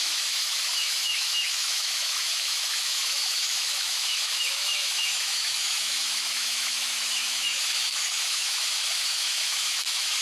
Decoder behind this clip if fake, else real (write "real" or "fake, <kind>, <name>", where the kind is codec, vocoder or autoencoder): fake, autoencoder, DAC-VAE